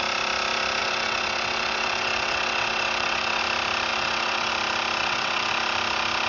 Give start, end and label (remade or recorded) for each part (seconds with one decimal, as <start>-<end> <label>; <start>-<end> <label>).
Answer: 0.0-0.8 recorded; 0.8-3.4 remade; 3.4-3.9 recorded; 3.9-4.5 remade; 4.5-5.0 recorded; 5.0-5.5 remade; 5.5-6.3 recorded